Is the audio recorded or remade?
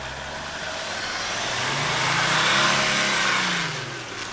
recorded